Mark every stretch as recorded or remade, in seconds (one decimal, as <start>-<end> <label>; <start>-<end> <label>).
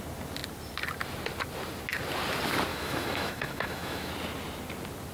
0.0-2.7 recorded; 2.7-4.1 remade; 4.1-5.1 recorded